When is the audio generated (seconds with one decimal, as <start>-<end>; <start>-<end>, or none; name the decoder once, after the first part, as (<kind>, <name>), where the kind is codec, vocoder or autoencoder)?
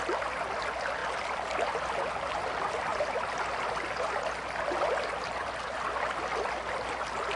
none